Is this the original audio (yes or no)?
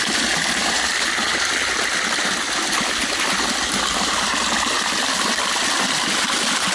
yes